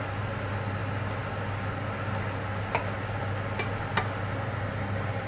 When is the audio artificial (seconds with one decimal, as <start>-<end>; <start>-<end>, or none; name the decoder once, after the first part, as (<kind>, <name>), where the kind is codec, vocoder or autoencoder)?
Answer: none